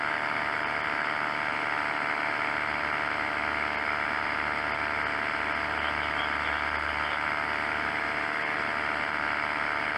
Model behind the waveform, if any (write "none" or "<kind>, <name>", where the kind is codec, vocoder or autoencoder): none